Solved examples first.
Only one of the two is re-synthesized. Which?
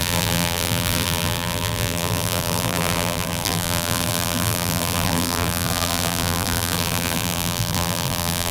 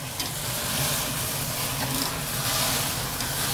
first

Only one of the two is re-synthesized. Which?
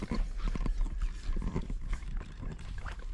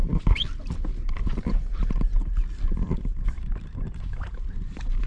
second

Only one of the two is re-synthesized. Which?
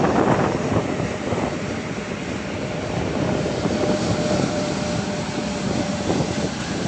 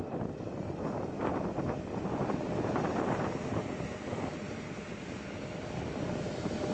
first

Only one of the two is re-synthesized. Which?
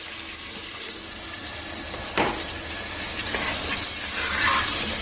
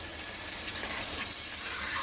second